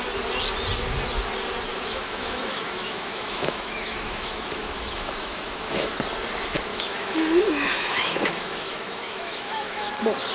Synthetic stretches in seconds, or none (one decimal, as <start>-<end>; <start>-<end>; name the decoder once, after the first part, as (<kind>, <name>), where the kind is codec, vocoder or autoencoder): 1.7-5.9 (autoencoder, DAC-VAE); 6.7-9.9